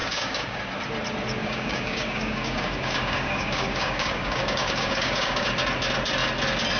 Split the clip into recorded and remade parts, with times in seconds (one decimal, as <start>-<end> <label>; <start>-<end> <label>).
0.0-0.6 remade; 0.6-1.4 recorded; 1.4-5.5 remade; 5.5-6.8 recorded